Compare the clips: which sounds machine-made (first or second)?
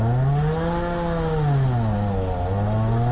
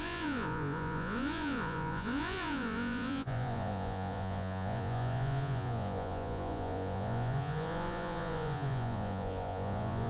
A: second